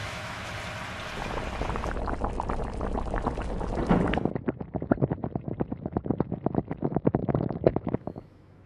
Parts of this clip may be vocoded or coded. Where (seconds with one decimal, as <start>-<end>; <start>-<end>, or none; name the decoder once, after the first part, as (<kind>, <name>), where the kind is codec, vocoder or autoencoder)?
0.0-0.5 (autoencoder, DAC-VAE); 7.2-8.7